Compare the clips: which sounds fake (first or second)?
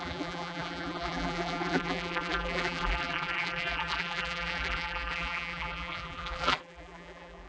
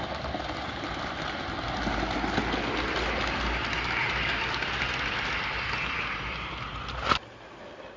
first